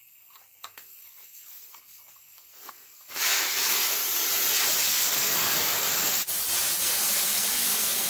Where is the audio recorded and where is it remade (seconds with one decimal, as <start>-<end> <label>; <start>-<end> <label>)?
0.0-4.0 remade; 4.0-4.8 recorded; 4.8-6.2 remade; 6.2-6.8 recorded; 6.8-8.1 remade